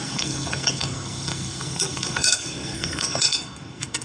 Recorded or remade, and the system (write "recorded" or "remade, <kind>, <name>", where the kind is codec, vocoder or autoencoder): remade, codec, SNAC